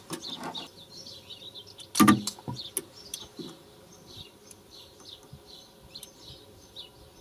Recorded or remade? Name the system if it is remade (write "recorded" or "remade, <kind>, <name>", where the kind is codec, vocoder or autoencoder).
recorded